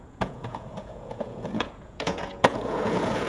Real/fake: fake